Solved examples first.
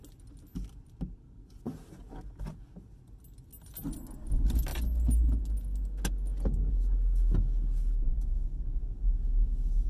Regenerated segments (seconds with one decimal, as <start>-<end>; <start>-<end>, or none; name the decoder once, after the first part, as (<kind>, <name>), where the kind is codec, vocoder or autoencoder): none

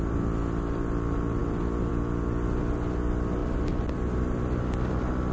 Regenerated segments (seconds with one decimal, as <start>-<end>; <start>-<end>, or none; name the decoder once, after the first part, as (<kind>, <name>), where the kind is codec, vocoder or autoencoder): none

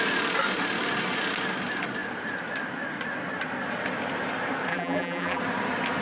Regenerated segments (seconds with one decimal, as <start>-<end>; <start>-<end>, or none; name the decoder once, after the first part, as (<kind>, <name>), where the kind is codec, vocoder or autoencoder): 4.7-5.4 (vocoder, BigVGAN v2)